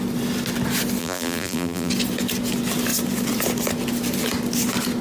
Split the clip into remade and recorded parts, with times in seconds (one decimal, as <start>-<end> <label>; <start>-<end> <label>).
0.0-1.0 recorded; 1.0-1.9 remade; 1.9-5.0 recorded